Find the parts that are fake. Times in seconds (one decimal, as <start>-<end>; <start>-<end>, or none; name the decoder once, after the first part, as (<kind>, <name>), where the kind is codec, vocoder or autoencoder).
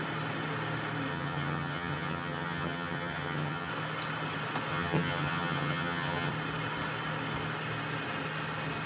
1.1-3.7 (vocoder, HiFi-GAN); 4.7-6.3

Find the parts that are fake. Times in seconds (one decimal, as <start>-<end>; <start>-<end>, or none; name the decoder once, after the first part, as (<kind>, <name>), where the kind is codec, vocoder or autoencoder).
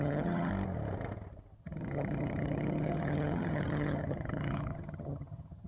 0.0-0.5 (vocoder, HiFi-GAN); 1.6-5.7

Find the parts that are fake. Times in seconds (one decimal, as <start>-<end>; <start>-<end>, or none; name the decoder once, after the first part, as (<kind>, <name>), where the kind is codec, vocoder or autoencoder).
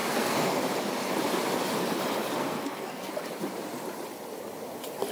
0.0-0.6 (codec, SNAC); 2.4-3.1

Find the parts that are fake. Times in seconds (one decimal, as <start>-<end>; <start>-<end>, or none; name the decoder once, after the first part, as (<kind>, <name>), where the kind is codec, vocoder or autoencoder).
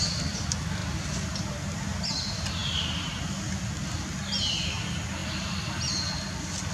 0.8-1.4 (vocoder, BigVGAN v2)